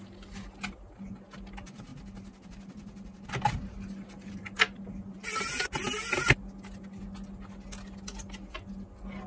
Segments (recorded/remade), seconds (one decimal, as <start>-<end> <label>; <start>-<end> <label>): 0.0-9.3 recorded